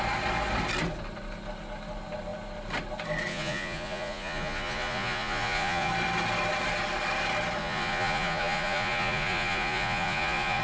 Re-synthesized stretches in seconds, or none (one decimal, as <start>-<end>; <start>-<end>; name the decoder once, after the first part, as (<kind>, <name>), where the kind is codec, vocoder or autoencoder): 3.3-5.9 (vocoder, Vocos); 7.6-10.6